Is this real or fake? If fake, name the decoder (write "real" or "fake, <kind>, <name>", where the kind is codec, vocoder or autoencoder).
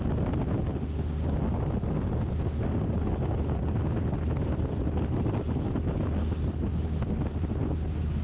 real